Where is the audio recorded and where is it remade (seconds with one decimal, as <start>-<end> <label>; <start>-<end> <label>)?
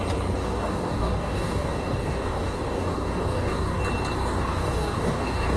0.0-0.4 recorded; 0.4-3.8 remade; 3.8-4.2 recorded; 4.2-5.6 remade